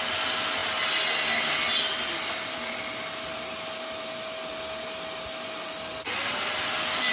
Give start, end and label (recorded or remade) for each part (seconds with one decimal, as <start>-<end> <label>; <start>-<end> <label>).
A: 0.0-7.1 recorded